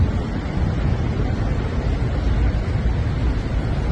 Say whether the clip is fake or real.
real